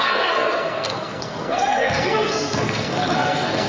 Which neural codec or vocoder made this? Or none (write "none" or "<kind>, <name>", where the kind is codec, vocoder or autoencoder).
codec, SNAC